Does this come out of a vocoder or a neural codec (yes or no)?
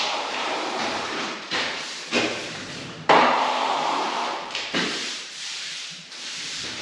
yes